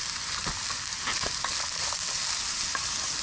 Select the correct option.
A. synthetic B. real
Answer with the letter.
B